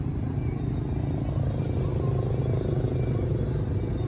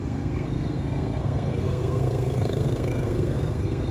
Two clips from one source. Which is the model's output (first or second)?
second